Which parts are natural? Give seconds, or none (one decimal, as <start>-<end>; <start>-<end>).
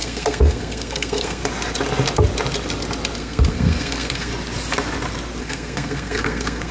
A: 1.4-3.2; 4.3-5.4